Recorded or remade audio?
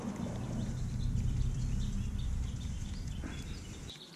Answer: remade